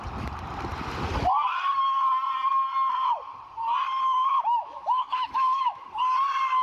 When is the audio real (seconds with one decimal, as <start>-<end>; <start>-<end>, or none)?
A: 0.0-4.3; 5.8-6.6